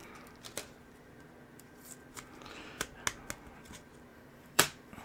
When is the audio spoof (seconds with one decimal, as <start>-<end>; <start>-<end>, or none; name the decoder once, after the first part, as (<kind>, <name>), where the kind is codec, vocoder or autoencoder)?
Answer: 4.1-5.0 (vocoder, BigVGAN v2)